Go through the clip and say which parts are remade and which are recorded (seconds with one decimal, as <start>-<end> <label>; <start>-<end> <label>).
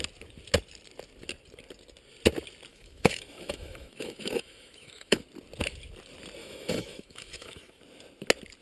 0.0-2.7 recorded; 2.7-5.2 remade; 5.2-6.4 recorded; 6.4-7.8 remade; 7.8-8.6 recorded